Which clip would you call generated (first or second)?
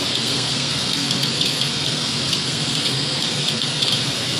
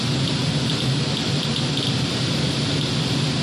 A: first